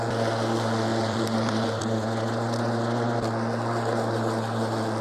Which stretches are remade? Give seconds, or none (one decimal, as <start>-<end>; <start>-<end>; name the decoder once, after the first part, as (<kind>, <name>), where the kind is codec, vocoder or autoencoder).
0.9-1.8 (vocoder, BigVGAN v2)

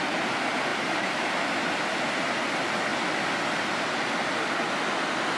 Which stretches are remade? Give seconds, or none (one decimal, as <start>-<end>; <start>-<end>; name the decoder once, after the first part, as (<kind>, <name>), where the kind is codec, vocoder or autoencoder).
0.7-1.3 (vocoder, BigVGAN v2)

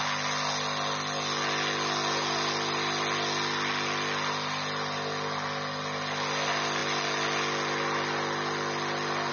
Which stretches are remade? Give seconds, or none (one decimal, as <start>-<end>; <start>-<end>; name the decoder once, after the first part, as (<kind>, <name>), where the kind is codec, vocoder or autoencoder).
none

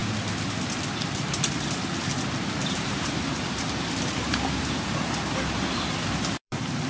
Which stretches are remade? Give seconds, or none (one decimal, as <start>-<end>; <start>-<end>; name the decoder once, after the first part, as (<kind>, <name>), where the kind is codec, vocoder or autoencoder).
2.6-6.9 (vocoder, BigVGAN v2)

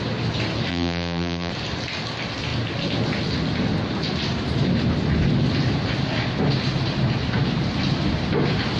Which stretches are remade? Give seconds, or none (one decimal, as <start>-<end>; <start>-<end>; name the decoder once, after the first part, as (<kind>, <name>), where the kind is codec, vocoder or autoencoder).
0.7-1.5 (vocoder, BigVGAN v2)

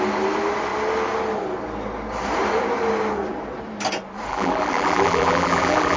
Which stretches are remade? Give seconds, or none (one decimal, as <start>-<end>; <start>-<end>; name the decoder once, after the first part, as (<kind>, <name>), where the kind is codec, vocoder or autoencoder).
4.3-6.0 (vocoder, BigVGAN v2)

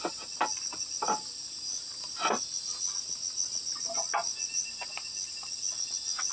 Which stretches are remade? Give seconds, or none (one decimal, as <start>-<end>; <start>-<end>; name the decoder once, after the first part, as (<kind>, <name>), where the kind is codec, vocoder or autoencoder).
none